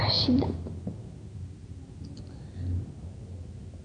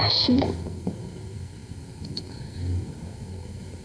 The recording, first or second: first